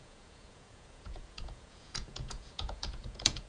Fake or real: fake